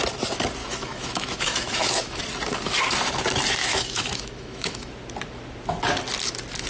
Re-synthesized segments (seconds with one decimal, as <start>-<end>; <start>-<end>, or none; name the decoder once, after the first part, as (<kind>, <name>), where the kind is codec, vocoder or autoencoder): 0.6-2.2 (autoencoder, DAC-VAE); 3.6-4.9